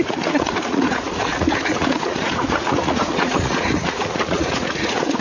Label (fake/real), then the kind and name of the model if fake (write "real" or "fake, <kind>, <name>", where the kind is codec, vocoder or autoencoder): fake, vocoder, Vocos